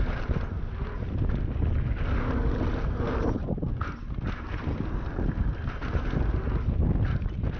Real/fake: real